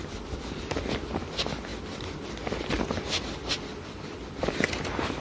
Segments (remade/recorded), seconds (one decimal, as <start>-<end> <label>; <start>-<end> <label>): 0.0-5.2 recorded